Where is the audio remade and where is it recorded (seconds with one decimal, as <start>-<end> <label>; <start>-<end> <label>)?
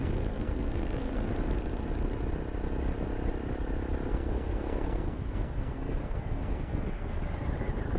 0.0-1.3 remade; 1.3-4.1 recorded; 4.1-7.2 remade; 7.2-8.0 recorded